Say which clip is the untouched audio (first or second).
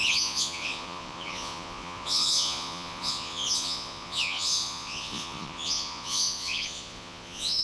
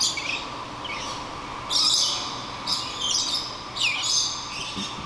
second